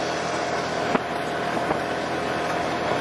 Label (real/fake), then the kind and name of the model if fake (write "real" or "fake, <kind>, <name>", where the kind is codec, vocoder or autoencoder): real